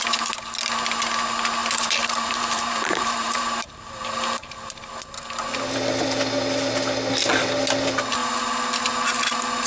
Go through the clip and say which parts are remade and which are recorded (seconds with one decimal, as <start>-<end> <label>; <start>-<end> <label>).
0.0-1.6 recorded; 1.6-4.9 remade; 4.9-9.7 recorded